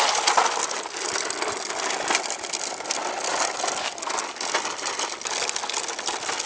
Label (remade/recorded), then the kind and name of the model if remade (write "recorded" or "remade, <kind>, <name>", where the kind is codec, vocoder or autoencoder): recorded